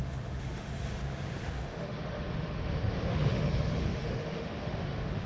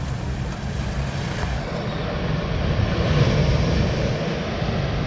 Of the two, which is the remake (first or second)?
first